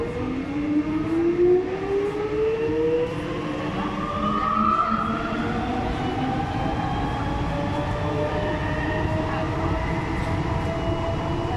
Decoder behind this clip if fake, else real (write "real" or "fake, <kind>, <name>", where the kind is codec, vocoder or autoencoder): real